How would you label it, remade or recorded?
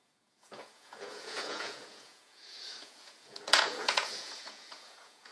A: remade